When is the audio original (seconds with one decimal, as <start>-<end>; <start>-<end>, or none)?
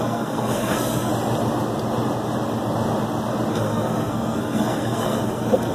1.1-3.5